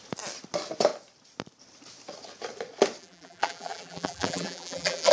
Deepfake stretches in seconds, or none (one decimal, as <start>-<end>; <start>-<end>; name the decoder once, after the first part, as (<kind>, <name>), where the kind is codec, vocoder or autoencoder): 3.0-5.1 (vocoder, BigVGAN v2)